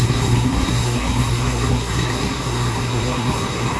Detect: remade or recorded remade